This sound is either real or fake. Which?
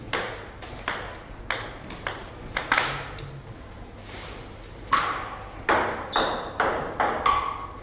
real